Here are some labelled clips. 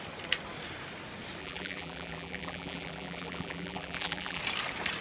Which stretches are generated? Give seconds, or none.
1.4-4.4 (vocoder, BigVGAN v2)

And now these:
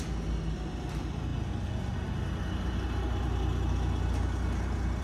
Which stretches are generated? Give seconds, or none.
none

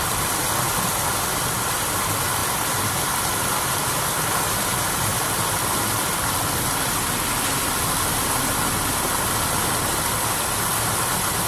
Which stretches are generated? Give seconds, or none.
0.0-2.4 (vocoder, BigVGAN v2); 7.3-8.6; 10.7-11.5

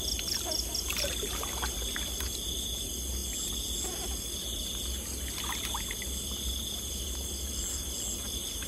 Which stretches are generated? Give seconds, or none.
none

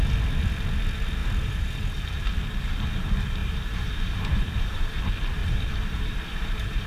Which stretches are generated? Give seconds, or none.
1.2-1.8 (vocoder, BigVGAN v2); 3.4-5.0; 5.4-6.9

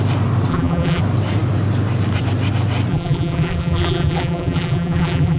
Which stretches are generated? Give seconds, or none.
0.5-1.0 (vocoder, BigVGAN v2); 2.9-5.4